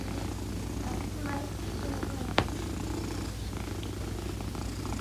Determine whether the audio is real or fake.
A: real